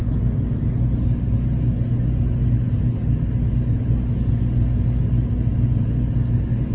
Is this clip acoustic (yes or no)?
yes